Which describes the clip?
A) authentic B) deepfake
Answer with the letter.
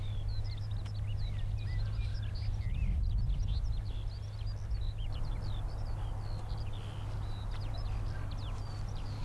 A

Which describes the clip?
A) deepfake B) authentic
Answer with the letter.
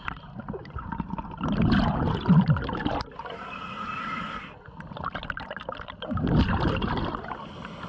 B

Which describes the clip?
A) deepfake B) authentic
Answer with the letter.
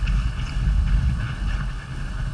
A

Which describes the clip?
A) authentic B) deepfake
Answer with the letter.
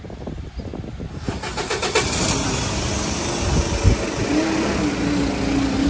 A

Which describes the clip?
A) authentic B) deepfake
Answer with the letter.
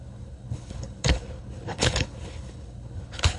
B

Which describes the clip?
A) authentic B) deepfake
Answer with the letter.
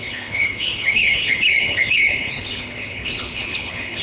B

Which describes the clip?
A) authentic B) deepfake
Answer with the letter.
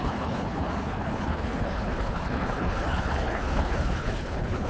B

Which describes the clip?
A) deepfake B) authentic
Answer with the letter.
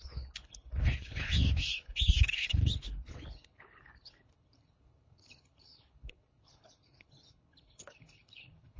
A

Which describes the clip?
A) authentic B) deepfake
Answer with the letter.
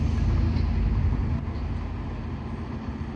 A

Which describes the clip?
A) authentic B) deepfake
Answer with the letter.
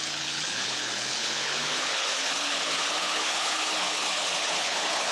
B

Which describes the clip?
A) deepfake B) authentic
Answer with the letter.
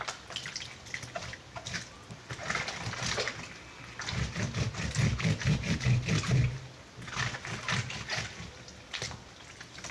B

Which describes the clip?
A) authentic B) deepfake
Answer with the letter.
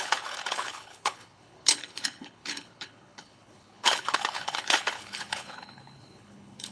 B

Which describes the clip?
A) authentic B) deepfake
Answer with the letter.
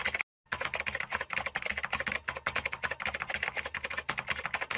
A